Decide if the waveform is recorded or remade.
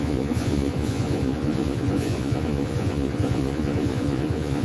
remade